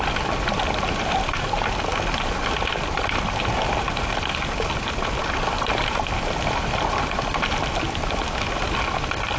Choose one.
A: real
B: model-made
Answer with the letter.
A